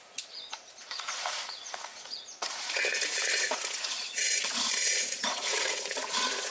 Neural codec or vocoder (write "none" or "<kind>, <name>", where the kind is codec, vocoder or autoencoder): vocoder, Vocos